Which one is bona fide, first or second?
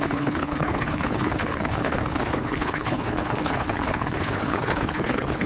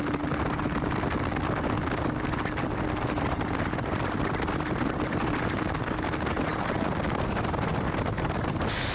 second